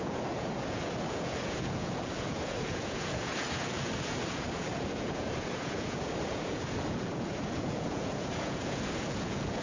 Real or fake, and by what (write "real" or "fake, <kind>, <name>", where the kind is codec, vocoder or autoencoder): fake, vocoder, Vocos